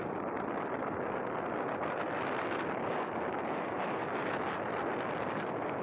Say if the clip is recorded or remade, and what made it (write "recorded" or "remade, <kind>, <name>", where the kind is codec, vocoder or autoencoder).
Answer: recorded